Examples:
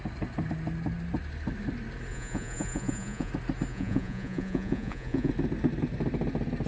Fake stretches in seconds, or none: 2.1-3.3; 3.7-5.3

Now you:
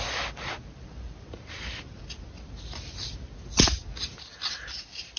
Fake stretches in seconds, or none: none